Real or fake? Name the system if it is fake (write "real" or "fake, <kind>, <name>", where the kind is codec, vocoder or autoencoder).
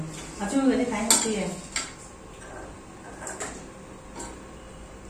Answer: real